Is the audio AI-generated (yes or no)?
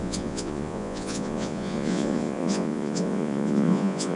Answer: yes